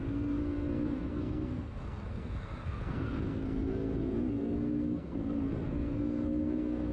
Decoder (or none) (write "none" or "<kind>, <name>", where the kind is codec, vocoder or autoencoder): codec, SNAC